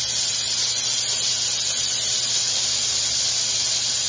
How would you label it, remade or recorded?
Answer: recorded